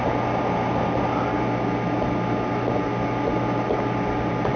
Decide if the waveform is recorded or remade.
recorded